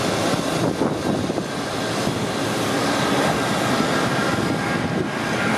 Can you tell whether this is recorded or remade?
recorded